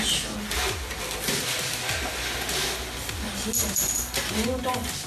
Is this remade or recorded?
recorded